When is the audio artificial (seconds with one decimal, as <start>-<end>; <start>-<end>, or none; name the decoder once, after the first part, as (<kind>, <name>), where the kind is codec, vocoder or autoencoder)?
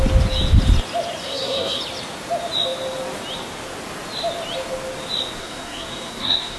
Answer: 1.2-1.8 (codec, SNAC); 5.4-6.6